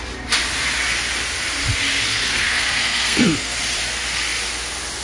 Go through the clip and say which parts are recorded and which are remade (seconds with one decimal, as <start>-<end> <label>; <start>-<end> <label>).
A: 0.0-2.1 recorded; 2.1-3.6 remade; 3.6-5.0 recorded